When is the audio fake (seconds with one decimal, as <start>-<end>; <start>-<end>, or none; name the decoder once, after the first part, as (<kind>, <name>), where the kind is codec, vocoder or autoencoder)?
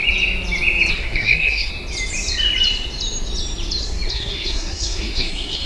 0.9-1.7 (codec, SNAC); 4.1-5.7